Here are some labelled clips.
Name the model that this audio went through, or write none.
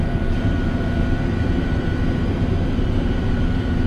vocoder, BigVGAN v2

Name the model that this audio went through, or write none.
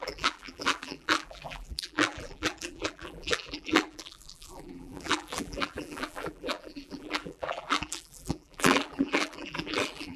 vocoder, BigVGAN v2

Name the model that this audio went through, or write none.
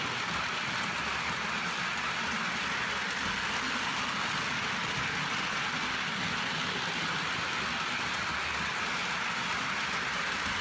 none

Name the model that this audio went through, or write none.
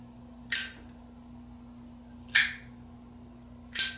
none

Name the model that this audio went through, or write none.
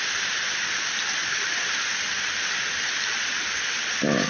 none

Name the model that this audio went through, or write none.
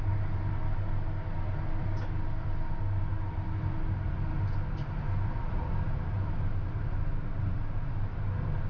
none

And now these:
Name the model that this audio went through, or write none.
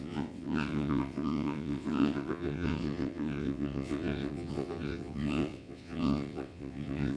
vocoder, WaveNeXt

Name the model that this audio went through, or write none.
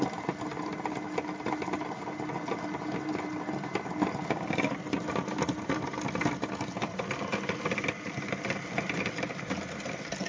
none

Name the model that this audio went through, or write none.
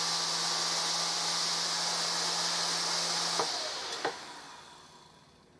none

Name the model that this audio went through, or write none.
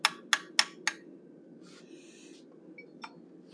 none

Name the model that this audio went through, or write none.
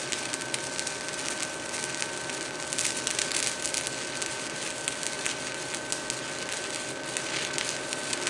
none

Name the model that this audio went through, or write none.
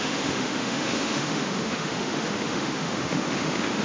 autoencoder, DAC-VAE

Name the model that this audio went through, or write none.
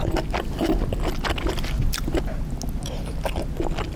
none